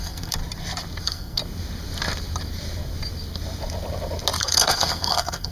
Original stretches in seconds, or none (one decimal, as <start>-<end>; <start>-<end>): 0.4-1.0; 1.4-4.4